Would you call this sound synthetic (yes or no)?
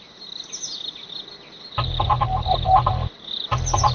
no